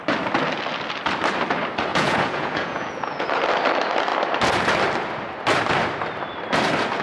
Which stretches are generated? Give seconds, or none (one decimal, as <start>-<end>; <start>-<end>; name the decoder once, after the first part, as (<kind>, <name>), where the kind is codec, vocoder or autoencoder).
1.9-3.2 (vocoder, Vocos)